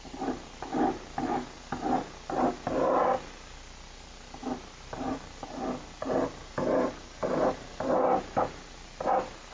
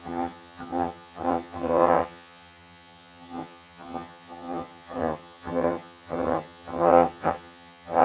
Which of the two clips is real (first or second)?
first